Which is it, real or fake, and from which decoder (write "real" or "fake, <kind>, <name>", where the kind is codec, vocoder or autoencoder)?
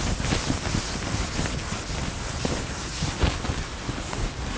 real